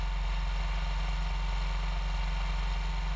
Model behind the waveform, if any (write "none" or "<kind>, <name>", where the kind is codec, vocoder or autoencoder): none